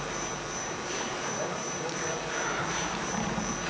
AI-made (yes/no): yes